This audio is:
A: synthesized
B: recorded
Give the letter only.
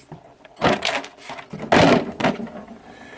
B